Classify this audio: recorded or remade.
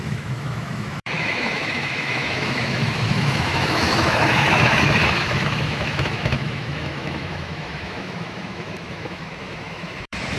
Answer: remade